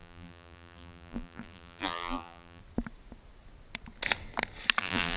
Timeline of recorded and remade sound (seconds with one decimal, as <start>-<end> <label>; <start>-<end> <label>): 0.0-2.6 remade; 2.6-4.8 recorded; 4.8-5.2 remade